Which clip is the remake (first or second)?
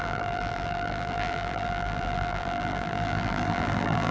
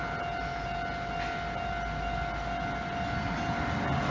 first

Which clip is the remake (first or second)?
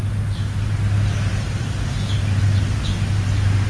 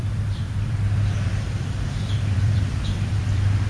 second